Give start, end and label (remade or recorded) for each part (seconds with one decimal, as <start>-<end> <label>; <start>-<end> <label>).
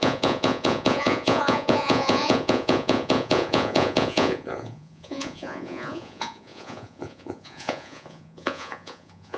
0.0-9.4 remade